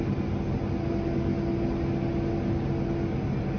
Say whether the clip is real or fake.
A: real